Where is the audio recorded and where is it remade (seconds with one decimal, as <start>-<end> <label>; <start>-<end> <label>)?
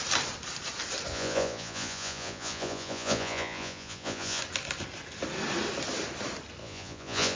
0.0-1.1 recorded; 1.1-4.4 remade; 4.4-6.6 recorded; 6.6-7.4 remade